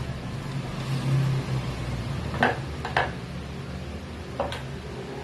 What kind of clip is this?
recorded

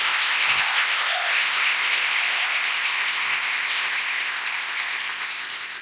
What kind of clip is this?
remade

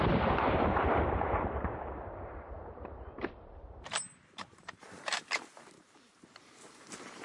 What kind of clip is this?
remade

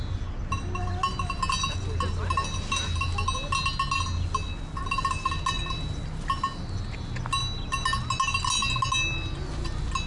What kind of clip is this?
recorded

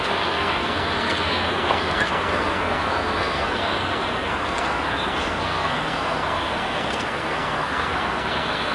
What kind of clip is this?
remade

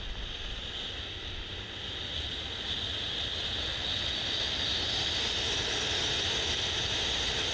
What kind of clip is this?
recorded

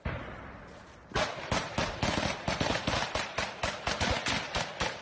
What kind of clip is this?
recorded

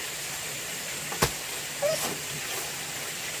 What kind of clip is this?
recorded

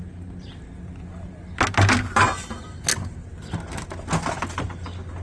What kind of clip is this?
recorded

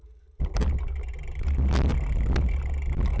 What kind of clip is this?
recorded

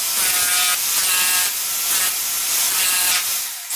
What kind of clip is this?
recorded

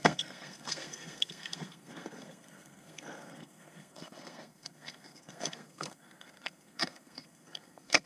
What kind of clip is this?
remade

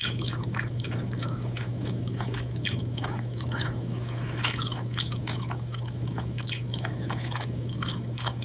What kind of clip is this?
remade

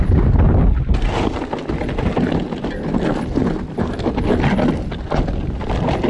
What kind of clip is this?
recorded